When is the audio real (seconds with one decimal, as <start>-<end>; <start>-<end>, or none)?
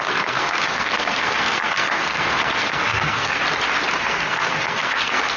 3.4-4.0